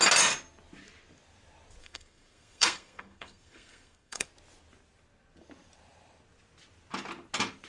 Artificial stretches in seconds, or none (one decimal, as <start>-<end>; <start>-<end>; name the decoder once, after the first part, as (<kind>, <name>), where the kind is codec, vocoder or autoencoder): 1.8-4.3 (codec, SNAC)